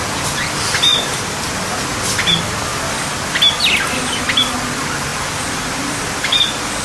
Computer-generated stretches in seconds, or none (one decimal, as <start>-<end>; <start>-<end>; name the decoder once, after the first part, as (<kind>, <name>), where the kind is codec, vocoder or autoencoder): 0.9-1.5 (vocoder, BigVGAN v2); 5.1-6.8